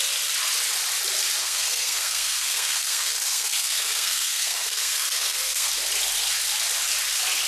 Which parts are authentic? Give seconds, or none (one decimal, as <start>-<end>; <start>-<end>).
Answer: 0.0-1.4; 5.7-7.5